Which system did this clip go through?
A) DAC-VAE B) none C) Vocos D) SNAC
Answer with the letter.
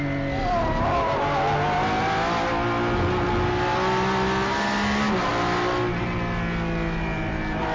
B